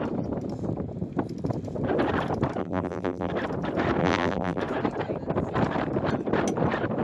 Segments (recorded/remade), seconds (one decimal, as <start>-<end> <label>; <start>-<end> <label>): 0.0-2.6 recorded; 2.6-3.3 remade; 3.3-4.0 recorded; 4.0-4.6 remade; 4.6-7.0 recorded